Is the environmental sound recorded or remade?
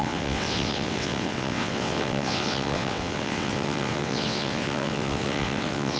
remade